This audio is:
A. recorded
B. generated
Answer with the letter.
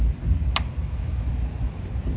A